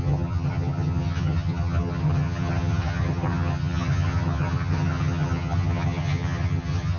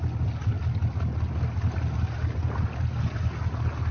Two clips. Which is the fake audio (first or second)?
first